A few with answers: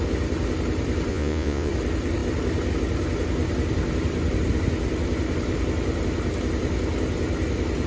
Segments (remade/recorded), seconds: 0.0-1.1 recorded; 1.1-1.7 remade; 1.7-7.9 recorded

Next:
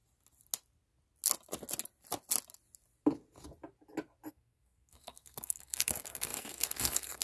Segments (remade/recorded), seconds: 0.0-4.3 recorded; 4.3-7.2 remade

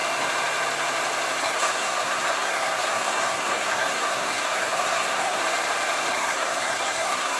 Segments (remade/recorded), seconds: 0.0-1.4 recorded; 1.4-5.4 remade; 5.4-6.1 recorded; 6.1-7.4 remade